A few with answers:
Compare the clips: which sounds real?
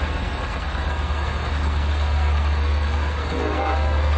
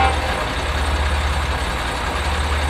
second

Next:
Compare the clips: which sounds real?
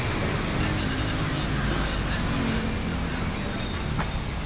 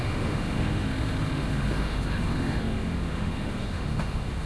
first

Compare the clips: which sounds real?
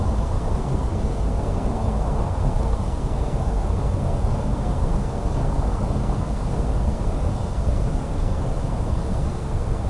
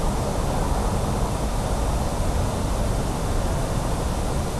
second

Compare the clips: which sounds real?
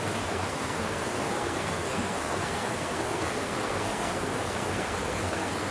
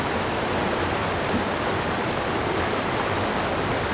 second